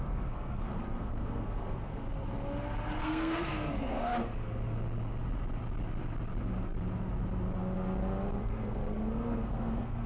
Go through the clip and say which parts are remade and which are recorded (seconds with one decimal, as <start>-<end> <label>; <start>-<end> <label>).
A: 0.0-2.0 remade; 2.0-3.0 recorded; 3.0-4.1 remade; 4.1-8.4 recorded; 8.4-10.1 remade